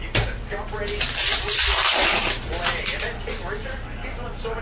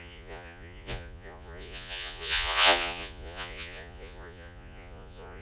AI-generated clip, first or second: second